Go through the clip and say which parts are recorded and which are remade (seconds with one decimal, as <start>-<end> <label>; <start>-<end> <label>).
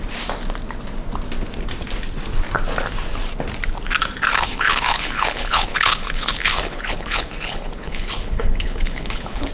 0.0-4.3 recorded; 4.3-9.5 remade